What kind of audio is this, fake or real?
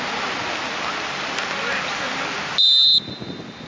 real